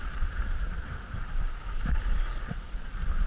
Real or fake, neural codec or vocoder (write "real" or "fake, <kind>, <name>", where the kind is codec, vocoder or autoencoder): fake, vocoder, BigVGAN v2